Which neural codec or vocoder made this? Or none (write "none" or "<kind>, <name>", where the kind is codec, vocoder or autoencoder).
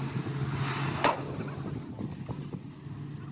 none